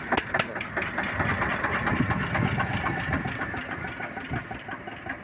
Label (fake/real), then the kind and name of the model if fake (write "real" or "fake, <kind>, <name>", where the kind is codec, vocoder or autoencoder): real